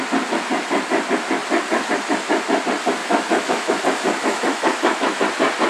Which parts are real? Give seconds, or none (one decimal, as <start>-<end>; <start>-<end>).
0.0-3.0; 3.8-4.2; 5.2-5.7